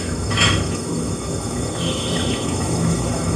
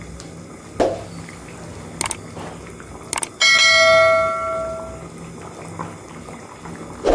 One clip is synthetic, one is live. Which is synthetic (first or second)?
first